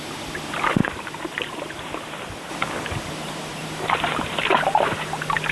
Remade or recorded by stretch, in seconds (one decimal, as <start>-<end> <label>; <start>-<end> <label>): 0.0-5.5 recorded